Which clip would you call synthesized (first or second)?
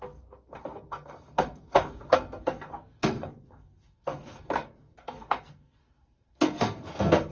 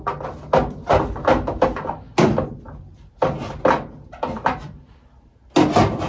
first